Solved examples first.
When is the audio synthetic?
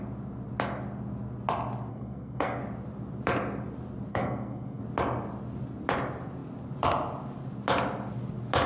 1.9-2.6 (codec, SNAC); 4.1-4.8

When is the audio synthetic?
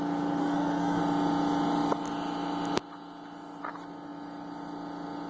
0.4-1.0 (codec, SNAC)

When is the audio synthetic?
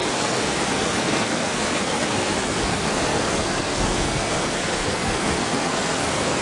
0.0-6.4 (codec, SNAC)